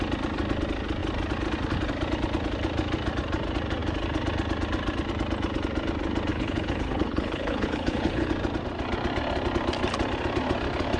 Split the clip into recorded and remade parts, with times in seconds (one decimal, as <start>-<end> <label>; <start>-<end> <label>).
0.0-6.3 recorded; 6.3-8.3 remade; 8.3-11.0 recorded